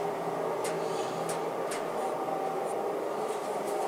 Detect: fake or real real